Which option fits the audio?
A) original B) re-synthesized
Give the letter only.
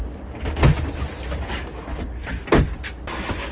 A